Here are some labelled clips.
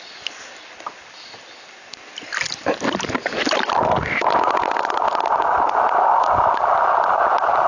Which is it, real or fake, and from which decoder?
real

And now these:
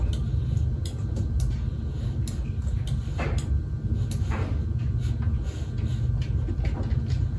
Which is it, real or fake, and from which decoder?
real